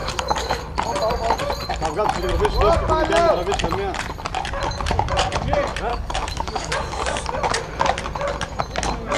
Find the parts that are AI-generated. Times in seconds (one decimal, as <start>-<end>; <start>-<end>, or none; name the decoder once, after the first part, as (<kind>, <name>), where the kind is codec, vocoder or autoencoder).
0.0-0.6 (codec, DAC); 5.9-7.2

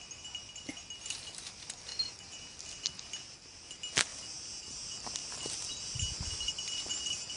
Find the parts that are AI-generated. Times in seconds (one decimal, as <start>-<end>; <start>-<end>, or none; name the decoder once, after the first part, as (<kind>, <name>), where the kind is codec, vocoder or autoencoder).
none

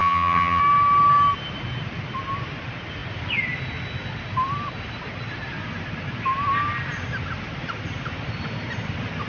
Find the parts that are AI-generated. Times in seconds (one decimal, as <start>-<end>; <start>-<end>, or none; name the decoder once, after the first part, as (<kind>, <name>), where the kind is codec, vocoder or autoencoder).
0.0-0.6 (vocoder, HiFi-GAN)

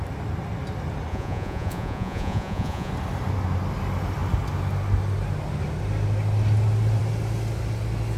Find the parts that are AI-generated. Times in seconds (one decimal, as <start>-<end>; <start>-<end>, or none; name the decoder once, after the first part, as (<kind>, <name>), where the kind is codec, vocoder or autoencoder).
1.1-2.9 (vocoder, Vocos)

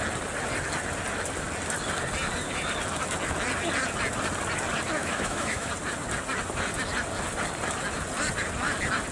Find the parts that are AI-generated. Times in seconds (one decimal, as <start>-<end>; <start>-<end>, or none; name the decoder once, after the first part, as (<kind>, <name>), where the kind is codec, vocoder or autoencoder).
5.0-5.7 (autoencoder, DAC-VAE)

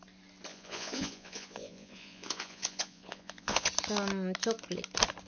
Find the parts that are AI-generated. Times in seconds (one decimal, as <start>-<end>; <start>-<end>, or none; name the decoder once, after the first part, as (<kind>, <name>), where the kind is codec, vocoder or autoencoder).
0.5-3.7 (vocoder, Vocos)